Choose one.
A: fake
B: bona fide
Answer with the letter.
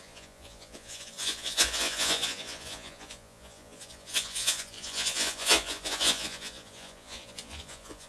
A